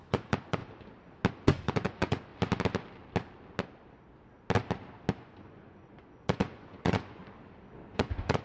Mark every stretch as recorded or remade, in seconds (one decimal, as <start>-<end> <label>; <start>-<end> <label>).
0.0-0.6 remade; 0.6-1.3 recorded; 1.3-2.3 remade; 2.3-5.1 recorded; 5.1-7.2 remade; 7.2-7.9 recorded; 7.9-8.4 remade